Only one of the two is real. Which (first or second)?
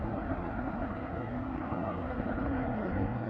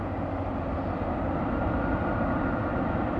second